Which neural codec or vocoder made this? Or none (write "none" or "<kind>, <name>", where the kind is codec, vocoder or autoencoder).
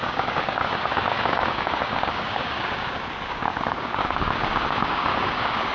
codec, DAC